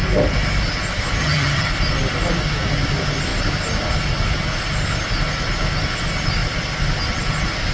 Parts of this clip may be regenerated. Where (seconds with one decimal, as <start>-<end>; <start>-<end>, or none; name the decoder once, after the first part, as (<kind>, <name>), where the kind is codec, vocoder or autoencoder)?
1.2-1.7 (vocoder, HiFi-GAN)

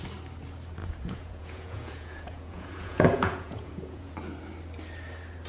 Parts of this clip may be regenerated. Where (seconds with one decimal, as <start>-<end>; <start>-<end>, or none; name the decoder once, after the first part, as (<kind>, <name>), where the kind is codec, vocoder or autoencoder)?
0.8-4.1 (vocoder, Vocos)

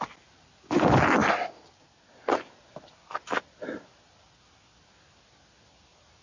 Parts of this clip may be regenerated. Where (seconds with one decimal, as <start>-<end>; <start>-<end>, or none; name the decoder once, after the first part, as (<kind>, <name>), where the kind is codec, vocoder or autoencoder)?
none

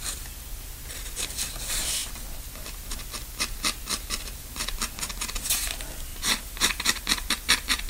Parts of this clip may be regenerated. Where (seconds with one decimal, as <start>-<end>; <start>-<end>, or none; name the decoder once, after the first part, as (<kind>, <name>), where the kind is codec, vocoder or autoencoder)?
6.1-6.7 (vocoder, BigVGAN v2)

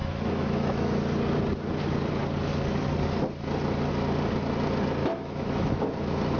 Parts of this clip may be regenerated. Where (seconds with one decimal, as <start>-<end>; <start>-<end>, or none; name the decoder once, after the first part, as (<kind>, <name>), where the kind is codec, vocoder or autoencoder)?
0.0-1.0 (autoencoder, DAC-VAE); 5.0-5.8

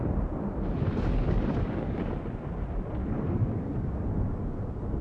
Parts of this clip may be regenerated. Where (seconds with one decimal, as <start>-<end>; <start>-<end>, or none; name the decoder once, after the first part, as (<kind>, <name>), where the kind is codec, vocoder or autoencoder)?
0.9-2.2 (codec, DAC); 3.0-4.0